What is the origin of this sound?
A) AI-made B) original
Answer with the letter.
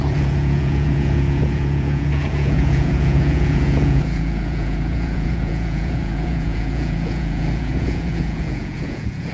A